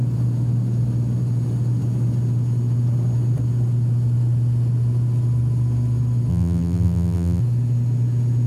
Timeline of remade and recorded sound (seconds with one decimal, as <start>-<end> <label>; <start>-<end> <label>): 0.0-6.3 recorded; 6.3-7.4 remade; 7.4-8.5 recorded